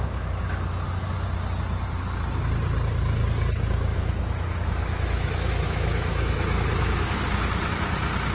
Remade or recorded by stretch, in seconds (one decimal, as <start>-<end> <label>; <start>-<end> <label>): 0.0-3.9 recorded; 3.9-7.2 remade; 7.2-8.3 recorded